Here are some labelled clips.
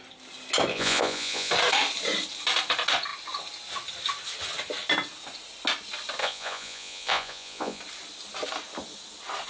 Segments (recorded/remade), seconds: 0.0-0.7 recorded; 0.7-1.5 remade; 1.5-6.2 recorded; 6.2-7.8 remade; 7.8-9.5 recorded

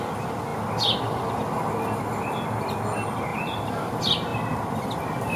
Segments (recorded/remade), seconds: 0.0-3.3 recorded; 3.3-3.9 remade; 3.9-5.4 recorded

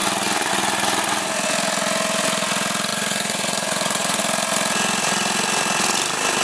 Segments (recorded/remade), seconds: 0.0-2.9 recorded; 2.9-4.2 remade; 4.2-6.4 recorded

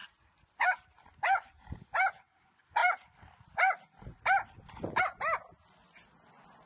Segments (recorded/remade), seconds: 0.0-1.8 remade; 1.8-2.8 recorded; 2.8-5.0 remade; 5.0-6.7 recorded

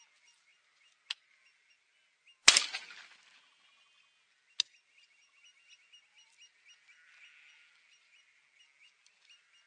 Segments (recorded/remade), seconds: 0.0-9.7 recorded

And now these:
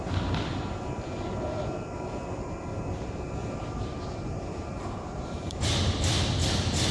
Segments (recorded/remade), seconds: 0.0-3.4 recorded; 3.4-5.6 remade; 5.6-6.9 recorded

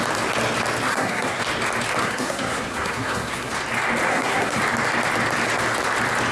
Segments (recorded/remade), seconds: 0.0-0.9 recorded; 0.9-1.4 remade; 1.4-2.0 recorded; 2.0-3.5 remade; 3.5-4.1 recorded; 4.1-4.6 remade; 4.6-6.3 recorded